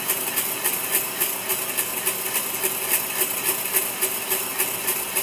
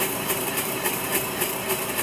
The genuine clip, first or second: first